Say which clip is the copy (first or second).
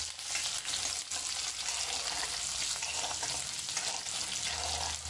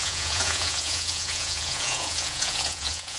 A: second